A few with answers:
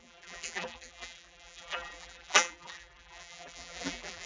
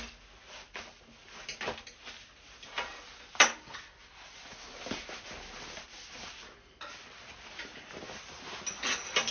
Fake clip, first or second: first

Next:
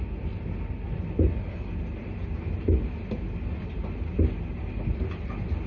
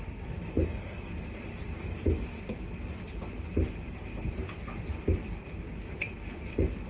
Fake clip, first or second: second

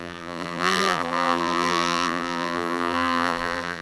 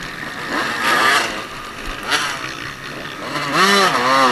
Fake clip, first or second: first